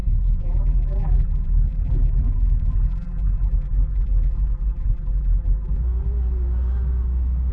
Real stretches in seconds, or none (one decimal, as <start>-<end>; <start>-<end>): 5.8-7.5

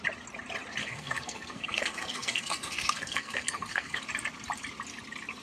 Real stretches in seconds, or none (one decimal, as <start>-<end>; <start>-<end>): 0.0-0.8; 4.0-5.4

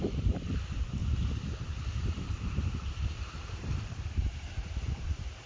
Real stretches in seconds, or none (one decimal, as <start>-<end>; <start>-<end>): 1.0-2.1